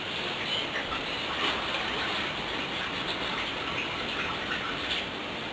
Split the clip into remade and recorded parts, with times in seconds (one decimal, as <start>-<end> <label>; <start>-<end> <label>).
0.0-5.5 recorded